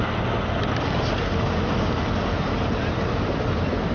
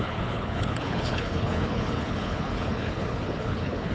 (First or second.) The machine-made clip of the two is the second